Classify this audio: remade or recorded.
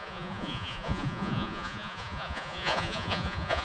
remade